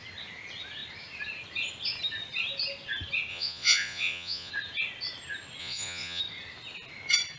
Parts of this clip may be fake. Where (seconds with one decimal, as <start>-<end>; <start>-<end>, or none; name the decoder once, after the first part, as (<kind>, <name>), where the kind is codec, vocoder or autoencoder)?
3.3-4.5 (vocoder, Vocos); 5.6-6.2